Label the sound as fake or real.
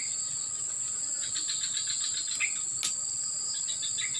real